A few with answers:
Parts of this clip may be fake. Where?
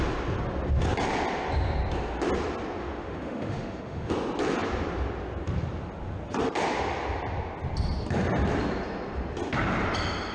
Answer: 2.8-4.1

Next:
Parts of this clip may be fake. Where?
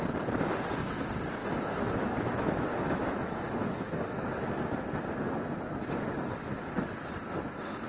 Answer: 1.4-4.6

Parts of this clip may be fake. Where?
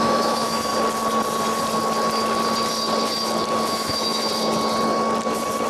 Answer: 0.0-0.7; 3.7-4.3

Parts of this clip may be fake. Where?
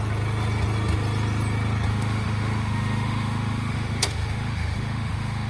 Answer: 1.9-5.5